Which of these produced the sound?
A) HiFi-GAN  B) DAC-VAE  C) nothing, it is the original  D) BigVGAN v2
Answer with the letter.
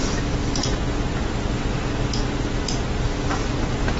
C